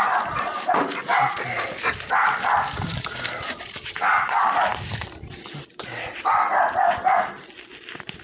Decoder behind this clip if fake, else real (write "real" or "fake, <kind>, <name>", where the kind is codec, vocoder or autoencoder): real